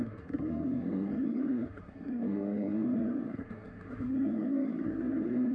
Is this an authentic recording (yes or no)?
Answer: no